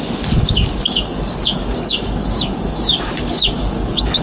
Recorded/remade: remade